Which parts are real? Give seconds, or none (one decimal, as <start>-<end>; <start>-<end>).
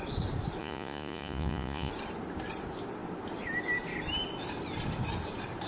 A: 0.0-0.6; 1.9-5.7